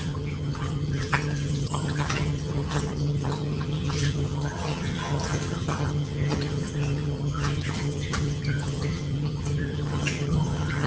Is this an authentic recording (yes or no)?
no